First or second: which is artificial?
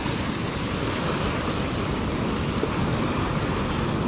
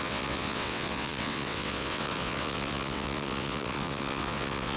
second